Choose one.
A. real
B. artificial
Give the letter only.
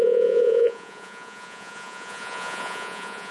B